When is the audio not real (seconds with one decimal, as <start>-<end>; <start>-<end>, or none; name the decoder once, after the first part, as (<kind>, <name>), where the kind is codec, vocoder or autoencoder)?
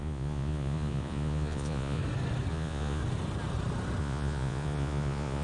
0.0-2.0 (vocoder, Vocos); 2.5-3.0; 4.0-5.4